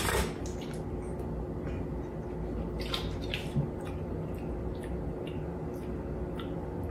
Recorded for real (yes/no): yes